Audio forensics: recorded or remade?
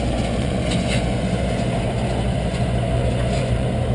remade